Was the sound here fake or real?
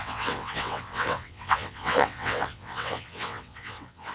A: fake